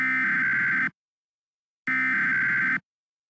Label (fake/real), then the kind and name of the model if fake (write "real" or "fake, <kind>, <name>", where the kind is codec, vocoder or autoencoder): real